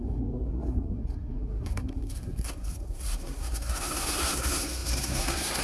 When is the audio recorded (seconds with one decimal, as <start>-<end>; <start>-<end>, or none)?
none